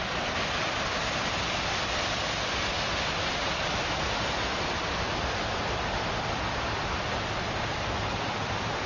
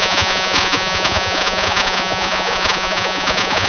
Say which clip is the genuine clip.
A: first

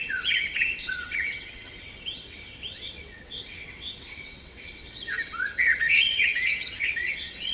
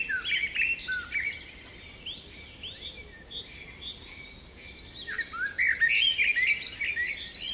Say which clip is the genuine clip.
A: second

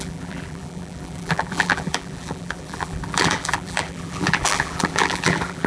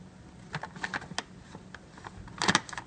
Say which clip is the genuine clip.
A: second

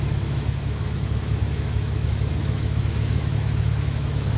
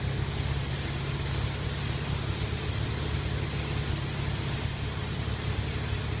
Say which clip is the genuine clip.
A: second